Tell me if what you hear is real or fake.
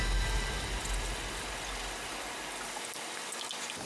real